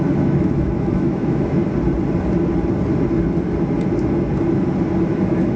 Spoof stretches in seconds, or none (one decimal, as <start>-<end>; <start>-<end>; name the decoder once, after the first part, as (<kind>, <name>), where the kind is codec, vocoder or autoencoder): 0.0-1.6 (autoencoder, DAC-VAE); 5.0-5.6

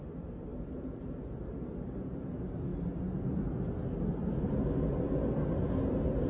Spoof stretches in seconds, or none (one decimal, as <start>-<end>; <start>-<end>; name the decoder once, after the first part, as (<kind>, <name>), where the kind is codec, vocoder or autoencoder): none

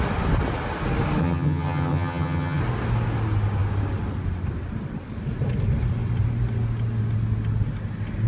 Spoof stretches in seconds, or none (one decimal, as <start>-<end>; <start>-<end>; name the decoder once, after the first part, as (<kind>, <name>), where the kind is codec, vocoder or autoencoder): 1.2-2.6 (vocoder, HiFi-GAN)

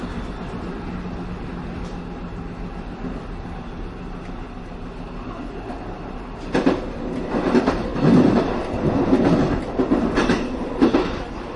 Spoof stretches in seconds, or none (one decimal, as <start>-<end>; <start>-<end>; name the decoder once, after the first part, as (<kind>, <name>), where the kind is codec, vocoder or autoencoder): none

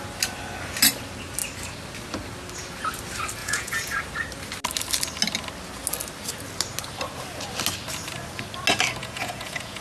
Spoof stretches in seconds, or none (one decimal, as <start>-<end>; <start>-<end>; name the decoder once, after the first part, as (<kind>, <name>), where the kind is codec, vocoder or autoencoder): 3.4-4.0 (vocoder, Vocos); 9.0-9.8

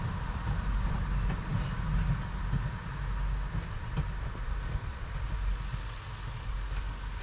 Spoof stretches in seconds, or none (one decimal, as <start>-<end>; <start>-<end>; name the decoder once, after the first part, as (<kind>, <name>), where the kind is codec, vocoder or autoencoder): none

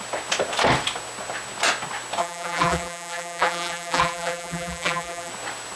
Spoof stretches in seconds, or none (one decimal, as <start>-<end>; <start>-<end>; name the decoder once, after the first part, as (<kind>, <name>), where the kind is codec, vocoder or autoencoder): 2.2-5.3 (vocoder, BigVGAN v2)

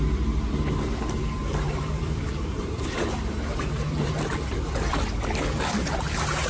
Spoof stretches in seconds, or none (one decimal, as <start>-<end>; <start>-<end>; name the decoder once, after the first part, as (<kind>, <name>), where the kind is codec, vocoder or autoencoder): 1.4-4.1 (vocoder, BigVGAN v2)